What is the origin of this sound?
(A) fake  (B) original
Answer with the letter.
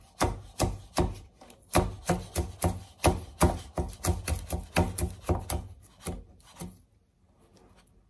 B